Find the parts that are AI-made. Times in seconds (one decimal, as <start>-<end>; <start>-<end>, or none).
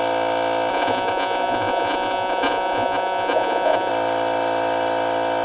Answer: 0.7-3.9